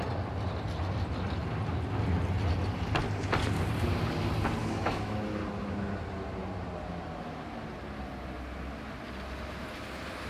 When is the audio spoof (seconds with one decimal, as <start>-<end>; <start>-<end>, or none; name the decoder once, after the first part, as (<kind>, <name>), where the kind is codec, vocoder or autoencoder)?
4.6-5.4 (autoencoder, DAC-VAE)